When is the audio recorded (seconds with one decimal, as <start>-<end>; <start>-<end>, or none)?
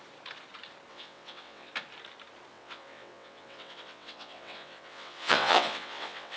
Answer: 0.0-0.9; 1.7-2.5